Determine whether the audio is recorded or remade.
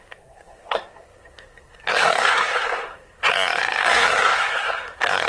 remade